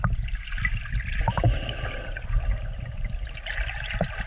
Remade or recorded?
recorded